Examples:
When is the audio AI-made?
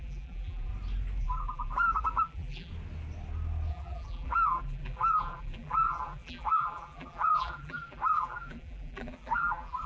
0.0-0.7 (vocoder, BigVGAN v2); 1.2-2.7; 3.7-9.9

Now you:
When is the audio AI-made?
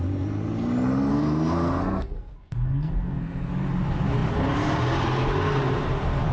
1.1-3.5 (codec, SNAC)